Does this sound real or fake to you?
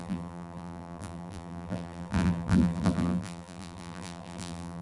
fake